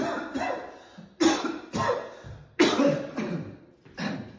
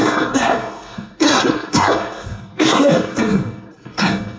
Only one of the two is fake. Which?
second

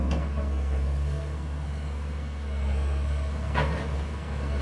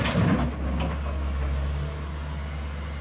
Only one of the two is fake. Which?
first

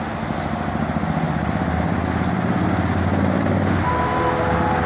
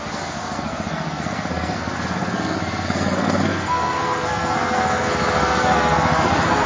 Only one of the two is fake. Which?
second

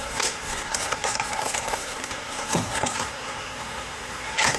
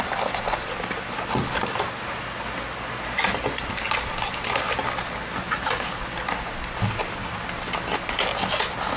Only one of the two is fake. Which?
first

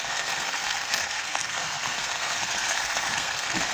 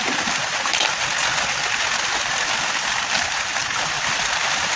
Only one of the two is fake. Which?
first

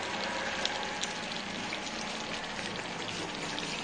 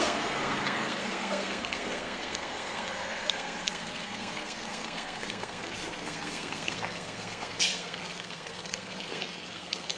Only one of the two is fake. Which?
second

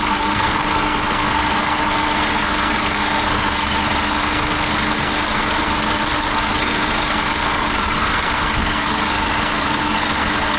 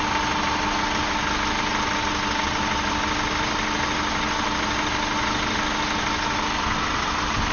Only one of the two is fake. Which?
first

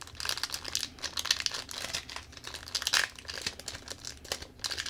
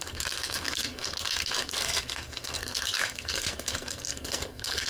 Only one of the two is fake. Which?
second